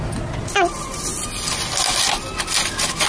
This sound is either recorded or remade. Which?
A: recorded